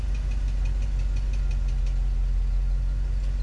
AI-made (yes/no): no